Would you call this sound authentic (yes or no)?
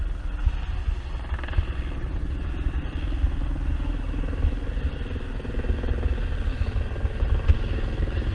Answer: yes